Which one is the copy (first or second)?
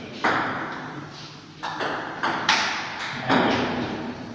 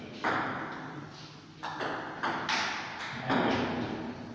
first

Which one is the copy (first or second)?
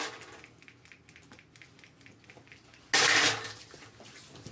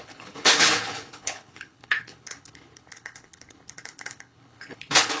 second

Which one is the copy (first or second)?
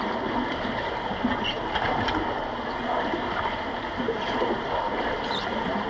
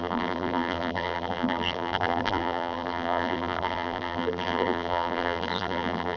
second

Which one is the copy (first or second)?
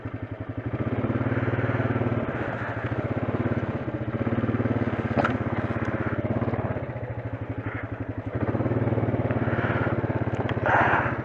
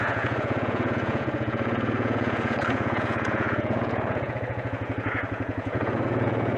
second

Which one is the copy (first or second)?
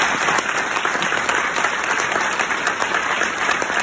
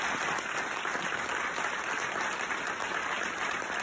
first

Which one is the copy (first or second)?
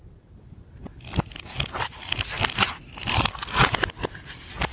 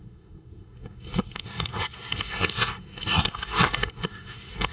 second